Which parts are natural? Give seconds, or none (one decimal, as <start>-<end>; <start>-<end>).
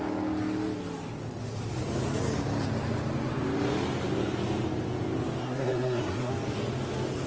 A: 0.0-5.4; 6.3-7.3